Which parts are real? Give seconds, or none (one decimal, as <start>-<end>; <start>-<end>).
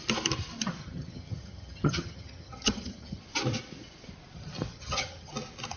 0.0-0.8; 3.2-4.7; 5.3-5.8